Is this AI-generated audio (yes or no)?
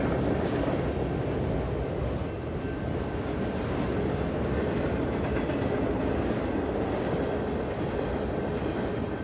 no